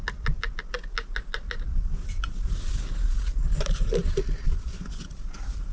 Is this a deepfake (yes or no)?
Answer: no